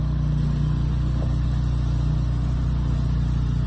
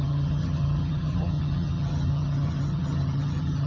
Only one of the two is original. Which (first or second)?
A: first